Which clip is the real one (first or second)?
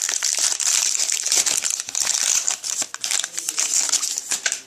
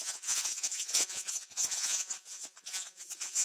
first